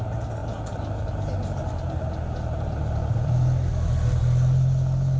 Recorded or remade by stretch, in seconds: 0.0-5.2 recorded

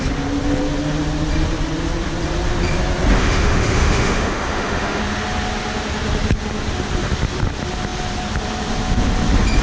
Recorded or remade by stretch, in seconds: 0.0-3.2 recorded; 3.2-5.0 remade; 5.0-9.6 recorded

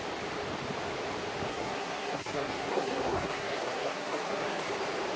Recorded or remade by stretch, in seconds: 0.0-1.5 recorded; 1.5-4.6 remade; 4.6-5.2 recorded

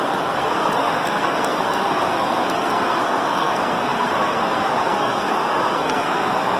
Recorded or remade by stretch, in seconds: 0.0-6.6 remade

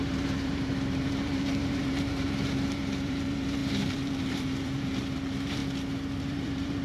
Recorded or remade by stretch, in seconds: 0.0-5.6 remade; 5.6-6.2 recorded; 6.2-6.8 remade

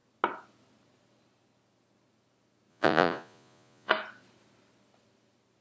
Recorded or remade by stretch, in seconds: 0.0-2.7 recorded; 2.7-3.9 remade; 3.9-5.6 recorded

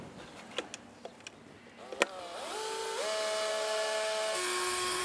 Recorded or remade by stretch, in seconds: 0.0-3.5 recorded; 3.5-5.0 remade

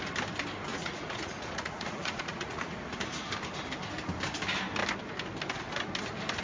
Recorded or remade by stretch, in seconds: 0.0-0.7 recorded; 0.7-2.8 remade; 2.8-6.4 recorded